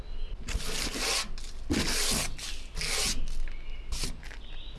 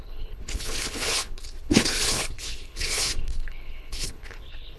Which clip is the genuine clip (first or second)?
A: first